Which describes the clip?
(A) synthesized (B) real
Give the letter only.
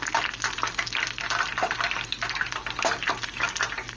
B